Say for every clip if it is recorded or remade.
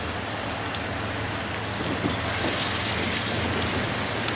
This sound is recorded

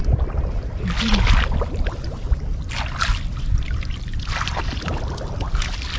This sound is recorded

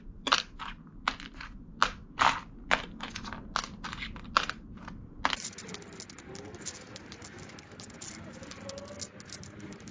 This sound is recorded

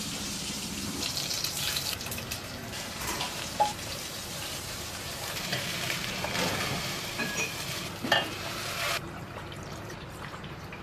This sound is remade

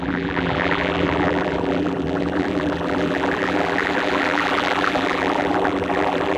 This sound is remade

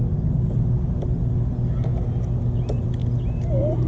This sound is recorded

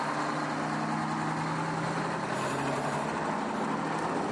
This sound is recorded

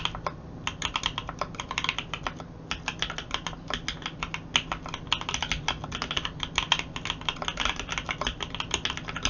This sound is recorded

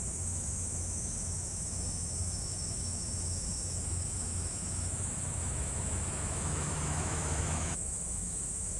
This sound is remade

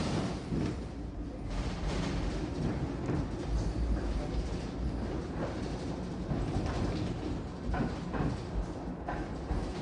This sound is recorded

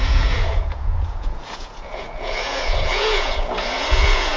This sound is remade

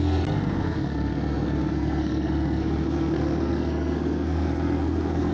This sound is remade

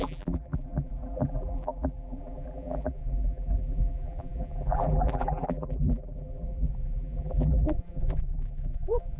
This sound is remade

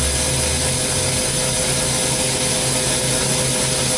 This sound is recorded